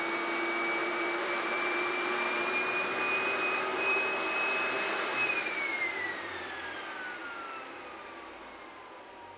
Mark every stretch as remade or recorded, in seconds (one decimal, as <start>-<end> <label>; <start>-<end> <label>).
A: 0.0-0.8 recorded; 0.8-4.0 remade; 4.0-5.7 recorded; 5.7-6.4 remade; 6.4-9.4 recorded